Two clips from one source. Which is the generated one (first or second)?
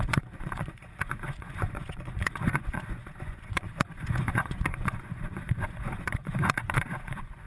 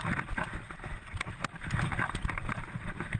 first